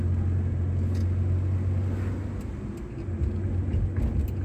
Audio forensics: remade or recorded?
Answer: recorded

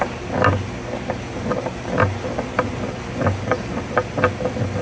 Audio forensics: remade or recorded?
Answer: recorded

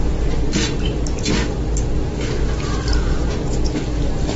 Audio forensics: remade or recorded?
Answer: recorded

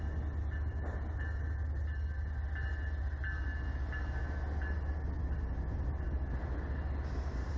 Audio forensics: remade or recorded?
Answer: recorded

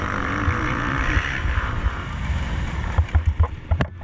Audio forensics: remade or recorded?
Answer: remade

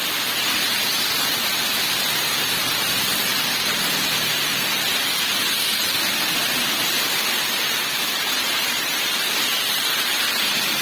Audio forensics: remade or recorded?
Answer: remade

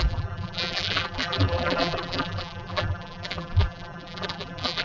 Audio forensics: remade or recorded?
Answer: remade